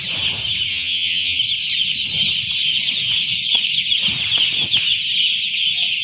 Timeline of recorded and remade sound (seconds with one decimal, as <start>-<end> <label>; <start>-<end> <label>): 0.0-0.7 recorded; 0.7-1.4 remade; 1.4-6.0 recorded